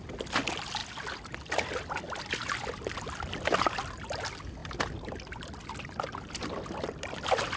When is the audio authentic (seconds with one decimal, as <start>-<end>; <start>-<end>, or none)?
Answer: 0.0-7.6